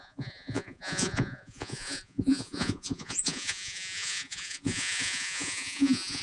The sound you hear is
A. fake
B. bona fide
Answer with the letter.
A